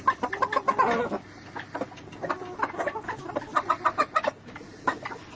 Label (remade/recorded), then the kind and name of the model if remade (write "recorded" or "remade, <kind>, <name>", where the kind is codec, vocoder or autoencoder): recorded